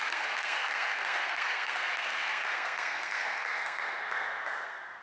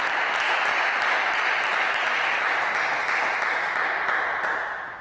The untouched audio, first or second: second